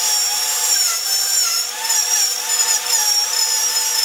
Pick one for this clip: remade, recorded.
remade